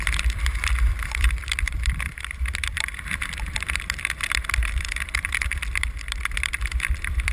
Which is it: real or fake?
fake